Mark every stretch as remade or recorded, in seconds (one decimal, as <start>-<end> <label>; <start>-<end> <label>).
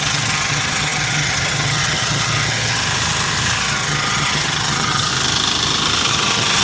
0.0-2.8 remade; 2.8-3.6 recorded; 3.6-5.1 remade; 5.1-6.1 recorded; 6.1-6.6 remade